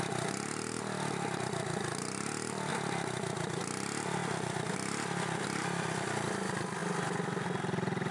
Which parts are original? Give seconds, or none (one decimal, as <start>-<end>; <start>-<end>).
0.0-8.1